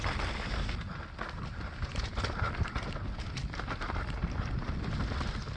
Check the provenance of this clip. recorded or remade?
recorded